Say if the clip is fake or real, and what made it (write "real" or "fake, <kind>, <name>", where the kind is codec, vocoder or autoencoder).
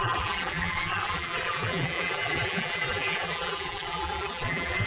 fake, vocoder, BigVGAN v2